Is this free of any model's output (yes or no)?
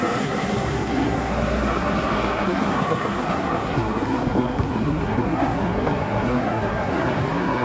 no